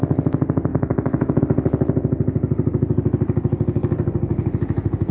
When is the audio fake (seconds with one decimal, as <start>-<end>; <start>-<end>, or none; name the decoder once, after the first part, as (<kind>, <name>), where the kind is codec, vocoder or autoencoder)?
0.7-1.4 (codec, DAC)